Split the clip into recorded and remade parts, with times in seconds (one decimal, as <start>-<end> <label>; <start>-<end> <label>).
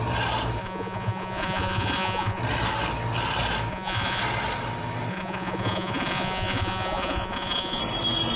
0.0-0.6 recorded; 0.6-2.4 remade; 2.4-3.7 recorded; 3.7-4.2 remade; 4.2-5.1 recorded; 5.1-7.8 remade; 7.8-8.4 recorded